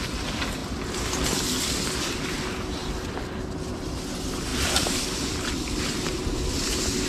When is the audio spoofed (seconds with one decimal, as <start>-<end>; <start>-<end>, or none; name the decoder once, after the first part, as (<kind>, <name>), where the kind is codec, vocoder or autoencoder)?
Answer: 4.5-5.8 (vocoder, BigVGAN v2)